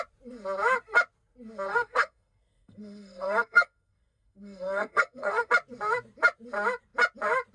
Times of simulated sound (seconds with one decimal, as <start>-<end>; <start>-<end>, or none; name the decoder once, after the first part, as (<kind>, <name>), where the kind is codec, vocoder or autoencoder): 1.7-5.5 (codec, SNAC)